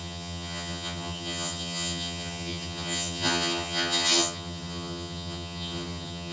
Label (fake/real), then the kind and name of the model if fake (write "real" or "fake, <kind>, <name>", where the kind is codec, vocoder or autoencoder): fake, vocoder, HiFi-GAN